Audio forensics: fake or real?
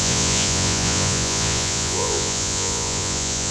fake